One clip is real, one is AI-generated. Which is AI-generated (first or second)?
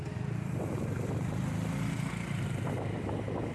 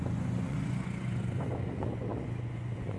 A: second